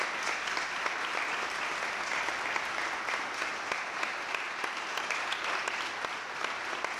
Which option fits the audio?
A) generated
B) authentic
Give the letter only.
B